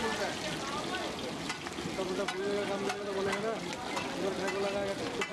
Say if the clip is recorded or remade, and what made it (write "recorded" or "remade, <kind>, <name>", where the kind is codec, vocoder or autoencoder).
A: recorded